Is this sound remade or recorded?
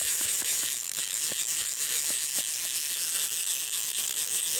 remade